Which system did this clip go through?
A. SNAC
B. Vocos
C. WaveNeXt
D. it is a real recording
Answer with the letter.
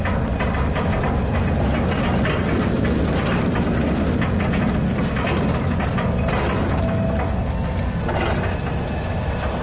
D